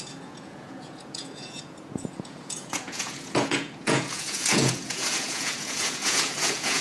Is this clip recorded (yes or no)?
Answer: no